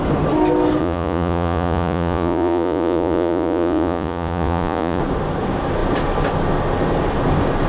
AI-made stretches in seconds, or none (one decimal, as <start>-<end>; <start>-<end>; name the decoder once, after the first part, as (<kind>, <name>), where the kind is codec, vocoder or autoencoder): 0.8-5.0 (vocoder, Vocos)

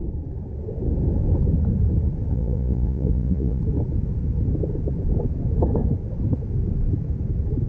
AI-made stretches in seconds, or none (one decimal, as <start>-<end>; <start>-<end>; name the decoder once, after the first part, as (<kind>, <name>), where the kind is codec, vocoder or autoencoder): 2.3-3.6 (vocoder, Vocos)